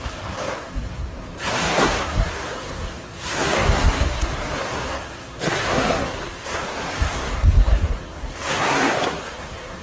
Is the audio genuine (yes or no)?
no